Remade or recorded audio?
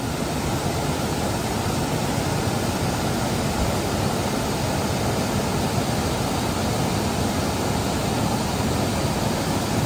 recorded